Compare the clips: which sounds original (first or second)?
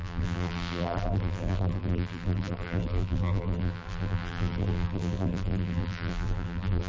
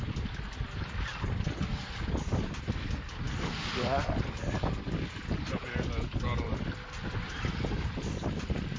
second